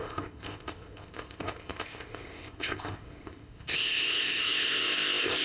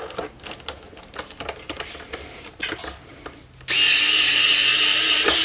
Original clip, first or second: second